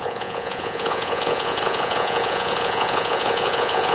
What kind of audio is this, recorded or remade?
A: remade